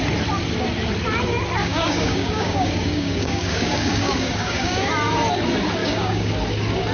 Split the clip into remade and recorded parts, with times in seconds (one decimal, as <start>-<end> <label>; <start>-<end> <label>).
0.0-1.6 recorded; 1.6-4.9 remade; 4.9-5.8 recorded; 5.8-6.3 remade; 6.3-6.9 recorded